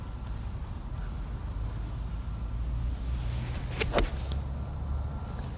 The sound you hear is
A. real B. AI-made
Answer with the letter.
A